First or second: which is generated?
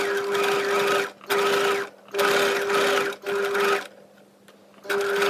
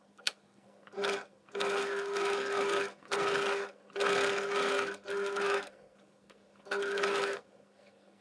second